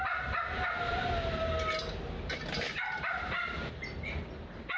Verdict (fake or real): real